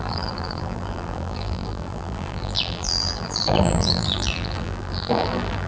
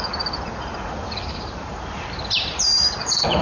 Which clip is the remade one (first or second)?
first